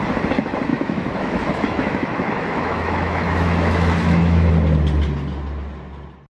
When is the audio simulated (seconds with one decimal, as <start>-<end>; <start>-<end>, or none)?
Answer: 0.7-4.5